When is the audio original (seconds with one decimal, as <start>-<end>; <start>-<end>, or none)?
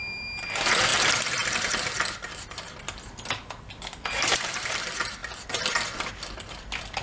0.0-7.0